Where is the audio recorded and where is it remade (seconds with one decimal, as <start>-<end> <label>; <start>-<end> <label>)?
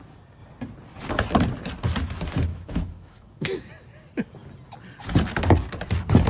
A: 0.0-2.5 recorded; 2.5-3.7 remade; 3.7-6.3 recorded